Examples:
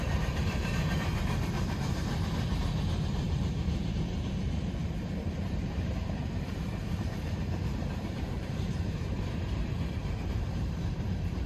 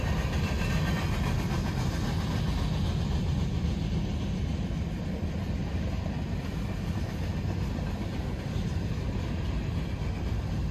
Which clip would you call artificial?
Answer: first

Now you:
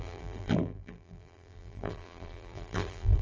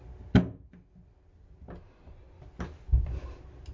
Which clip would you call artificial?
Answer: first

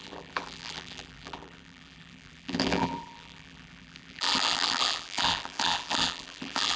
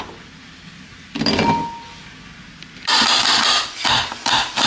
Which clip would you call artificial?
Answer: first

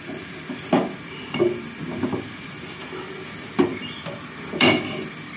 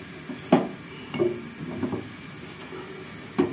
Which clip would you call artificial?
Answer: first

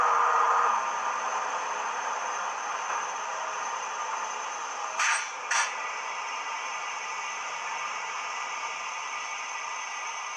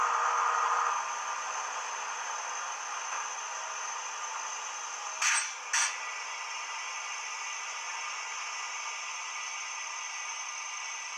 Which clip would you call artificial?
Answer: first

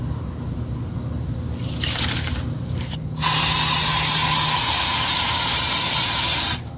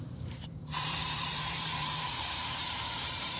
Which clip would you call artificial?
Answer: second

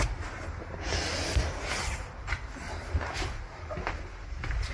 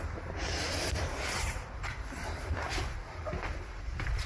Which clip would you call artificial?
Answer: second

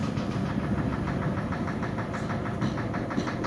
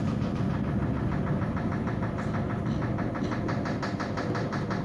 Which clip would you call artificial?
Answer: first